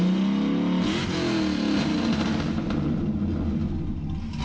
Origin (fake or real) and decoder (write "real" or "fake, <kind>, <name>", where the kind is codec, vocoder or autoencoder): real